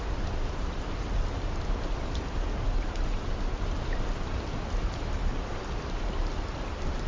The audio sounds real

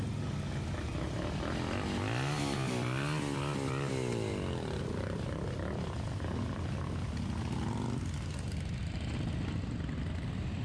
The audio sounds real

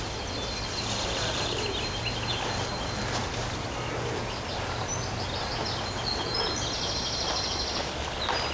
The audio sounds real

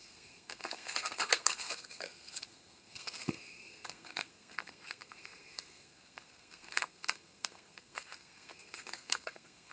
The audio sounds fake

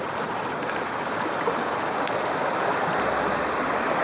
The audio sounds real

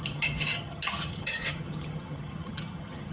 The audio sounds fake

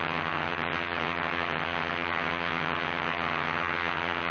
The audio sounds fake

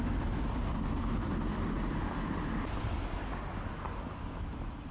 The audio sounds real